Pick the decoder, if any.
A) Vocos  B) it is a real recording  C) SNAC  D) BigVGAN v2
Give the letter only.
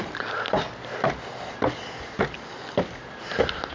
B